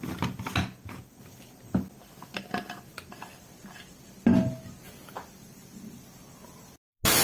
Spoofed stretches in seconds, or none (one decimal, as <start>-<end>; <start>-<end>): 0.6-1.2